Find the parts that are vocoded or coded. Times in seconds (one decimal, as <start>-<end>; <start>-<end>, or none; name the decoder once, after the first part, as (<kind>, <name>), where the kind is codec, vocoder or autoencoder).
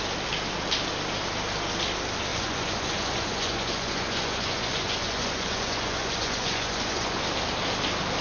2.3-7.2 (vocoder, Vocos)